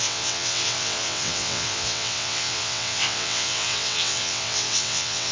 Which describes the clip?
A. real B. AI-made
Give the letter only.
B